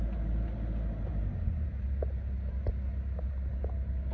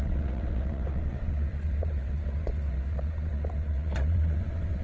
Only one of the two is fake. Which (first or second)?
second